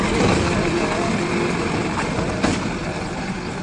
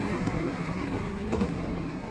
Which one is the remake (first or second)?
second